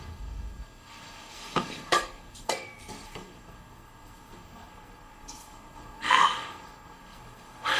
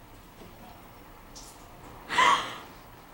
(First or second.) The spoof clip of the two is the first